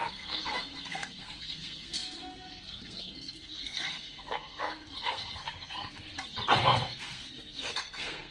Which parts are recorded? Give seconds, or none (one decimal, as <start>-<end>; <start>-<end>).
6.1-6.6